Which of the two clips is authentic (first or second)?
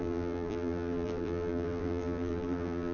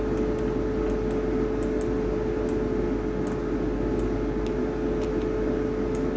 second